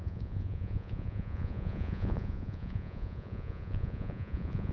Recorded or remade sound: remade